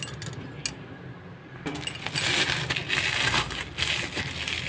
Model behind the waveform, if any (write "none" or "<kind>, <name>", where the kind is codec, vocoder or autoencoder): none